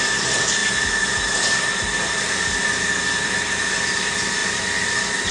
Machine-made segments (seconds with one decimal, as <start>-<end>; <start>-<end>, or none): none